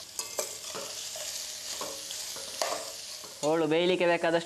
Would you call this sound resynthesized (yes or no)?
no